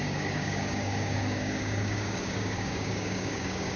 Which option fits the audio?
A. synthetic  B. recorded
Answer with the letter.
A